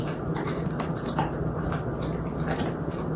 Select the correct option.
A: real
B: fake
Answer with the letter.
B